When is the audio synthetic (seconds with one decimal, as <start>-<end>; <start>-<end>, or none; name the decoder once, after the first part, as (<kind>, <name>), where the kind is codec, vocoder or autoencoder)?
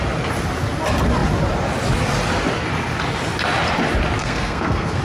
4.2-5.0 (codec, SNAC)